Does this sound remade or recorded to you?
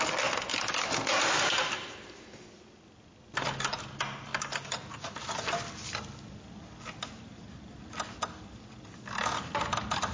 recorded